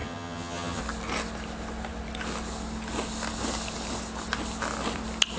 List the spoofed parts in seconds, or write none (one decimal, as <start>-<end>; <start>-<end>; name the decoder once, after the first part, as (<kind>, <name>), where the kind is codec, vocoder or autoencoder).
0.0-0.8 (vocoder, HiFi-GAN)